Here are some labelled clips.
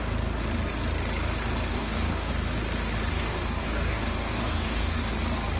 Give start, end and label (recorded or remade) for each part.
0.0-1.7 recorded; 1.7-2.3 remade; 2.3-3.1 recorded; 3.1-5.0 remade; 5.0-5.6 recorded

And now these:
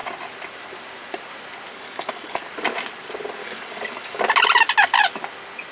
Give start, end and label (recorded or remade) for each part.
0.0-1.7 recorded; 1.7-2.4 remade; 2.4-3.4 recorded; 3.4-4.2 remade; 4.2-5.7 recorded